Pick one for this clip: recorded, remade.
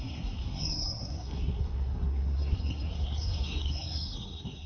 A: remade